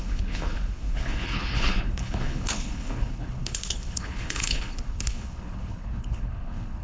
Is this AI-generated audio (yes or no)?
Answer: yes